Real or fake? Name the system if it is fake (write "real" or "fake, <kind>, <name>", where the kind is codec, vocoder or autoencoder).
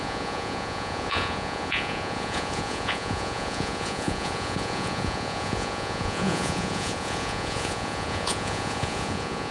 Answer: fake, vocoder, Vocos